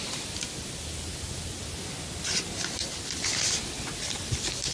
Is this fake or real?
real